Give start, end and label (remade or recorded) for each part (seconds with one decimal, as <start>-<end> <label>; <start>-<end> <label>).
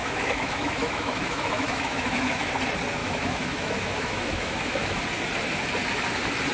0.0-2.5 remade; 2.5-3.0 recorded; 3.0-5.0 remade; 5.0-6.5 recorded